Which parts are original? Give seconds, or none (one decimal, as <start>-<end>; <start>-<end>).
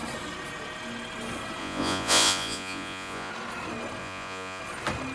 0.0-1.6; 3.3-4.0; 4.6-5.1